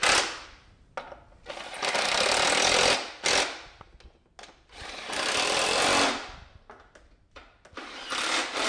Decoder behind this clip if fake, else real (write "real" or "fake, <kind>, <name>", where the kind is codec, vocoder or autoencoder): real